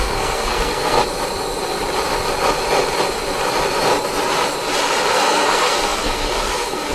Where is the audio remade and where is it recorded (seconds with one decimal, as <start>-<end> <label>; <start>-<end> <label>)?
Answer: 0.0-1.0 remade; 1.0-5.1 recorded; 5.1-6.9 remade